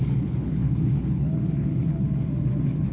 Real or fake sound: fake